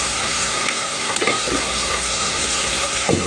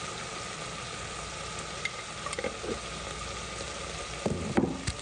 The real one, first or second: second